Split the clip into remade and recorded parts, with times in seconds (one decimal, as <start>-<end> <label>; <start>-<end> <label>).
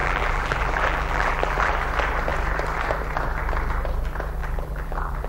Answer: 0.0-1.7 remade; 1.7-4.4 recorded; 4.4-5.3 remade